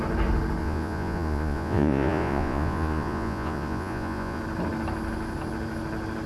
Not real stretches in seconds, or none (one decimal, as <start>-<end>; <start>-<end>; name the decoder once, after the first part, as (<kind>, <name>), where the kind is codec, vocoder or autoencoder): 0.6-4.4 (vocoder, Vocos)